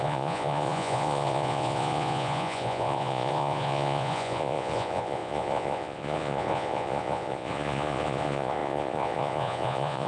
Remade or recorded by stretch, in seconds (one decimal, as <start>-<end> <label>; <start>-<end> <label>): 0.0-10.1 remade

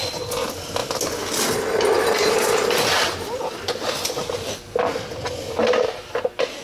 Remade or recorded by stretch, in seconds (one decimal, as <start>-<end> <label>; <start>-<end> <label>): 0.0-6.6 recorded

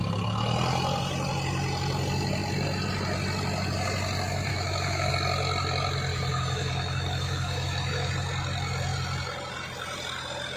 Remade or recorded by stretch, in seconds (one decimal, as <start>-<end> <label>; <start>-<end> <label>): 0.0-4.5 recorded; 4.5-5.1 remade; 5.1-6.1 recorded; 6.1-8.1 remade; 8.1-10.6 recorded

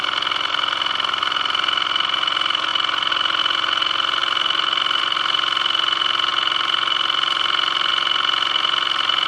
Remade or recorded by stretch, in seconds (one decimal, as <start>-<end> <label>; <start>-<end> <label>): 0.0-4.2 recorded; 4.2-5.0 remade; 5.0-6.3 recorded; 6.3-7.9 remade; 7.9-9.3 recorded

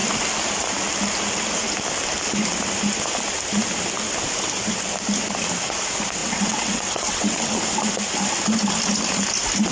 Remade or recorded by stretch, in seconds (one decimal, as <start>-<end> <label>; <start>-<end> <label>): 0.0-6.2 recorded; 6.2-7.5 remade; 7.5-9.7 recorded

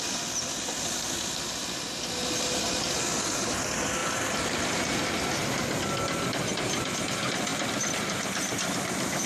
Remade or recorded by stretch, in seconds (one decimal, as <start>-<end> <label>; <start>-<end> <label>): 0.0-4.0 recorded; 4.0-4.9 remade; 4.9-5.4 recorded; 5.4-7.0 remade; 7.0-7.5 recorded; 7.5-9.3 remade

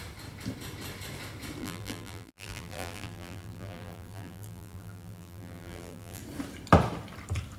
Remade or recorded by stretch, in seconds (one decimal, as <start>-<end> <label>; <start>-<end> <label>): 0.0-1.6 recorded; 1.6-6.2 remade; 6.2-7.6 recorded

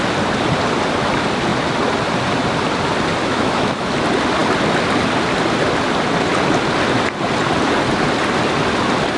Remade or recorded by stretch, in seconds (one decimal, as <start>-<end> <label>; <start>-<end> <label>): 0.0-3.2 recorded; 3.2-3.9 remade; 3.9-9.2 recorded